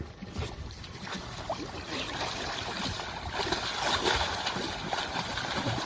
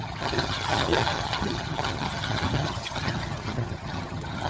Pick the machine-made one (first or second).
second